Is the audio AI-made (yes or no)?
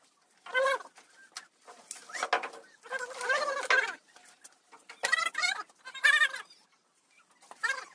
no